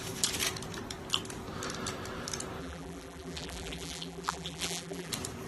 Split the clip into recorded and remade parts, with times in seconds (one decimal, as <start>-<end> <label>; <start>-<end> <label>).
0.0-2.6 recorded; 2.6-5.1 remade; 5.1-5.5 recorded